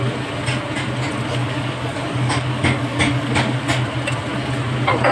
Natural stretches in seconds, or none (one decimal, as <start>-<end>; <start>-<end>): 0.0-1.4; 3.6-5.1